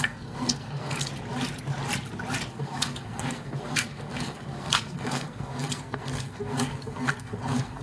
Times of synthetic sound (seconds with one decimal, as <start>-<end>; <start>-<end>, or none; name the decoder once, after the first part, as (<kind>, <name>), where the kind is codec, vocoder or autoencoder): 0.0-1.1 (codec, SNAC); 2.5-7.8